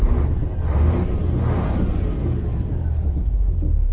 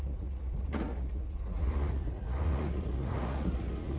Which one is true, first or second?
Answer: first